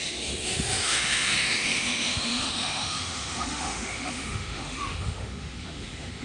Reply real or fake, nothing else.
fake